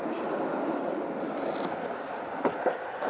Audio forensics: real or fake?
real